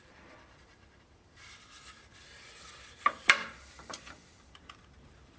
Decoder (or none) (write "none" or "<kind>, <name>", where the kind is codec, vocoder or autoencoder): vocoder, BigVGAN v2